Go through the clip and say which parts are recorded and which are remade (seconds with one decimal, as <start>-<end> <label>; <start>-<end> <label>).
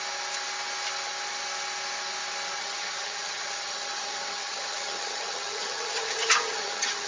0.0-2.6 recorded; 2.6-7.1 remade